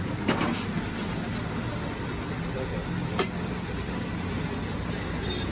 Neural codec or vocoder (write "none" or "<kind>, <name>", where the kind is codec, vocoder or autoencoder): none